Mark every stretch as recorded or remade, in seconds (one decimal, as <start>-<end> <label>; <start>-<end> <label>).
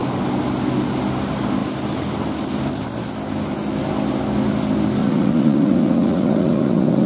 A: 0.0-5.0 recorded; 5.0-7.1 remade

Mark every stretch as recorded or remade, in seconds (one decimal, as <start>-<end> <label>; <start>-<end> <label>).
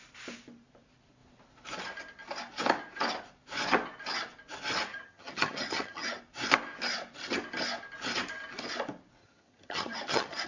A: 0.0-4.9 recorded; 4.9-6.2 remade; 6.2-9.2 recorded; 9.2-10.5 remade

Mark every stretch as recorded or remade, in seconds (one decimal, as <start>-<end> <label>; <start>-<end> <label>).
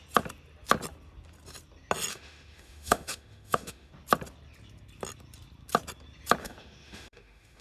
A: 0.0-2.1 recorded; 2.1-3.9 remade; 3.9-6.4 recorded; 6.4-7.6 remade